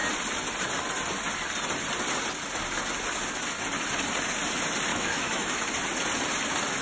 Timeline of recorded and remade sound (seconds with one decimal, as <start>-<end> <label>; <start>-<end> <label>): 0.0-4.9 recorded; 4.9-5.6 remade; 5.6-6.8 recorded